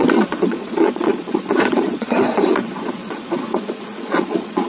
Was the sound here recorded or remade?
remade